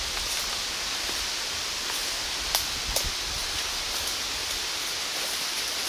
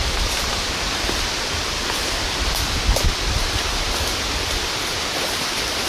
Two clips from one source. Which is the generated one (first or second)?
second